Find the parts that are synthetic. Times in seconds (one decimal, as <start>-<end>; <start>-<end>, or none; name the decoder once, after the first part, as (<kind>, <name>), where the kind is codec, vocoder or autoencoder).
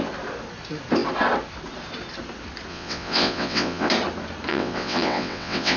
2.7-3.9 (vocoder, WaveNeXt); 4.5-5.8